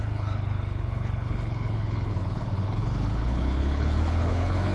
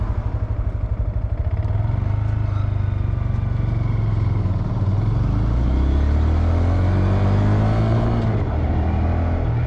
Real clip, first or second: second